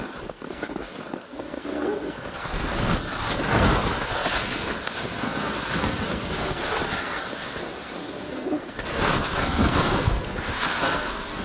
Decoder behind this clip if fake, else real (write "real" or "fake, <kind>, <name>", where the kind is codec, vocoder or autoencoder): fake, codec, SNAC